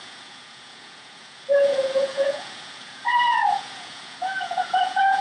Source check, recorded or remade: remade